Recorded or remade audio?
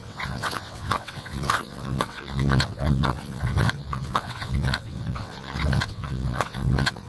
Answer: remade